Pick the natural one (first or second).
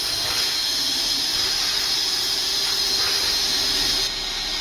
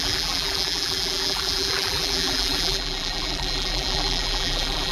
first